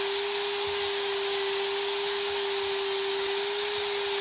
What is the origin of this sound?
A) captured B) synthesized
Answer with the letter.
A